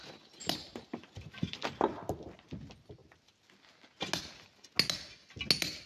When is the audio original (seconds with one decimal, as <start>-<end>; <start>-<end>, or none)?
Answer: 0.0-5.9